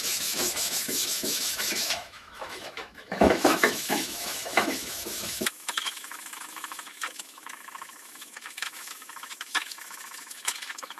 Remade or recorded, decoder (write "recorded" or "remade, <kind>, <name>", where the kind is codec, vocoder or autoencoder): remade, autoencoder, DAC-VAE